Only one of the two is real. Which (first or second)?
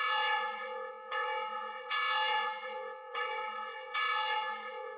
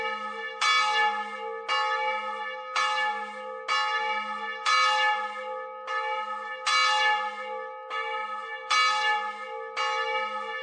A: second